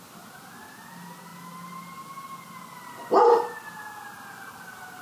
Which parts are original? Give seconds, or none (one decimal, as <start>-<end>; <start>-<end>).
0.0-5.0